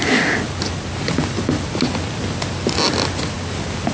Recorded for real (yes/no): yes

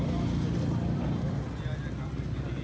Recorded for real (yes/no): yes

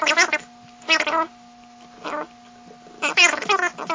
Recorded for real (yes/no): yes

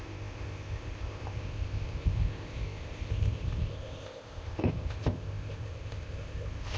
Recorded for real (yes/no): no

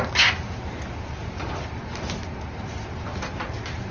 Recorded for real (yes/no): yes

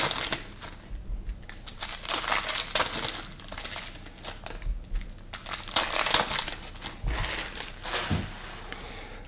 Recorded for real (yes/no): yes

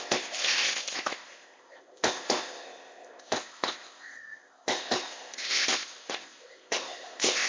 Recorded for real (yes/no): no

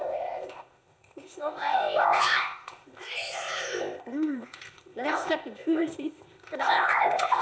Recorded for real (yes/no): no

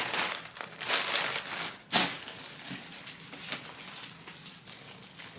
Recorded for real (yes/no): yes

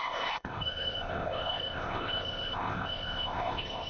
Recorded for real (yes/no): no